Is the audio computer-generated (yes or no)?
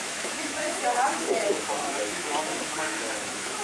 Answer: yes